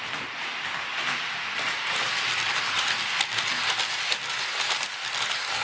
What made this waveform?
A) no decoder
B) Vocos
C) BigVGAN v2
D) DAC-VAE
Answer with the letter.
A